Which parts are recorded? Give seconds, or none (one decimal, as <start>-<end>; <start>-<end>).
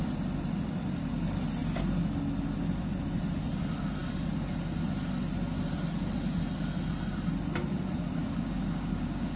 0.0-8.2